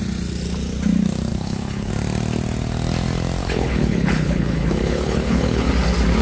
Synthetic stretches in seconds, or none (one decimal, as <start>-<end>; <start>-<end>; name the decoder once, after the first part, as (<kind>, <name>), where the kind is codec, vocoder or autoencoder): 1.3-1.9 (codec, HILCodec); 3.4-5.7